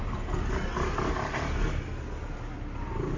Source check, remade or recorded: recorded